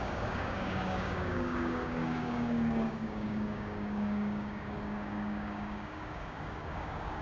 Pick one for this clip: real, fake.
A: fake